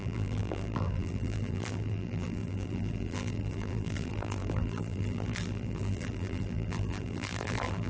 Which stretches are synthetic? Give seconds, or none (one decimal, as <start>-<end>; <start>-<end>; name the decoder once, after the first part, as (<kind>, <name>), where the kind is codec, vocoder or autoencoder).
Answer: 0.0-7.9 (vocoder, BigVGAN v2)

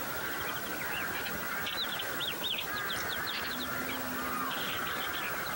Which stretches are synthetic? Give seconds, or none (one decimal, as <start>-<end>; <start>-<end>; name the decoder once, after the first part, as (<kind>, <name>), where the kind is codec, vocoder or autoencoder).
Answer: none

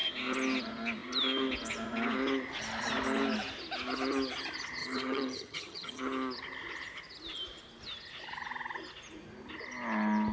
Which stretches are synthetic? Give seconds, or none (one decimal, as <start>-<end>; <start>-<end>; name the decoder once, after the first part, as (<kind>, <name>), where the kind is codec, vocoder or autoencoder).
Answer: 4.8-6.0 (vocoder, HiFi-GAN)

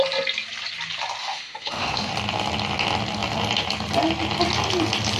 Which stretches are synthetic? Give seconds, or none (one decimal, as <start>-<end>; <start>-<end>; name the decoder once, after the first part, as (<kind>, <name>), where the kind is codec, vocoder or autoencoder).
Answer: 1.2-2.1 (autoencoder, DAC-VAE)

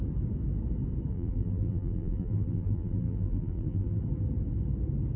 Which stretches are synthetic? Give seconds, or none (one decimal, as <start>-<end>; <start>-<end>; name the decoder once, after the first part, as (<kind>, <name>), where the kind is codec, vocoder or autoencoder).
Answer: 1.1-4.0 (vocoder, BigVGAN v2)

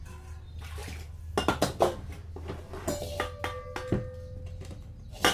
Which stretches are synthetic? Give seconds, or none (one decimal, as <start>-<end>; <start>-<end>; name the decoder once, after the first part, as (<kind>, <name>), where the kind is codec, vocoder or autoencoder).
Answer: none